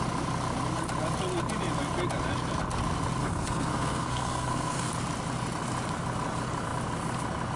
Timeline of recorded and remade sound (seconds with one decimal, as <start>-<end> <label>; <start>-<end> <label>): 0.0-3.2 recorded; 3.2-4.9 remade; 4.9-7.6 recorded